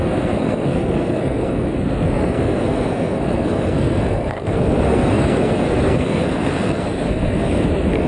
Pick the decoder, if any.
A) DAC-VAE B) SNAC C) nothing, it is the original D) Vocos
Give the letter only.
B